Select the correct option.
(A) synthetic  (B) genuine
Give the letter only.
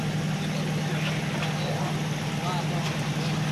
B